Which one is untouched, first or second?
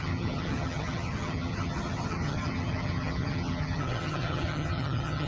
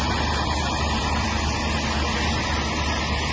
second